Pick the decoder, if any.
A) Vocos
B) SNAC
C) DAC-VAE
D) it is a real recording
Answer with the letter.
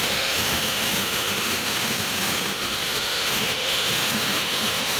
C